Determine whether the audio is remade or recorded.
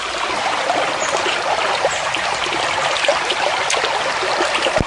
recorded